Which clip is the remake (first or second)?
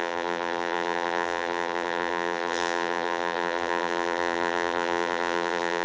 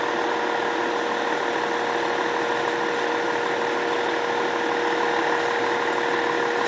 first